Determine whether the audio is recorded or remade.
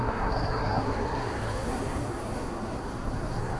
remade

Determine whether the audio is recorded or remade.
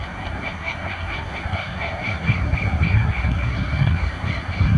remade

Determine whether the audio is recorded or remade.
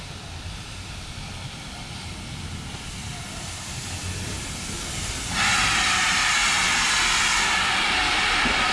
recorded